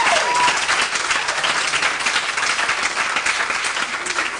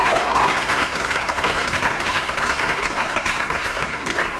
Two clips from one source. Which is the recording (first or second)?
first